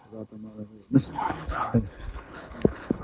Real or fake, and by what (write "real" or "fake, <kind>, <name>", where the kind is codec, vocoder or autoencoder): fake, codec, HILCodec